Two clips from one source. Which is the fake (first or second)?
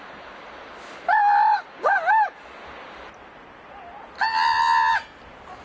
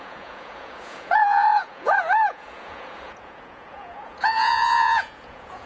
second